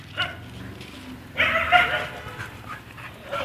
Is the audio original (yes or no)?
yes